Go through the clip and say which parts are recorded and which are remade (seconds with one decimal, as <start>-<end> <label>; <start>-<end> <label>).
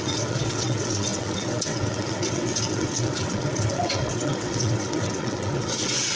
0.0-6.2 remade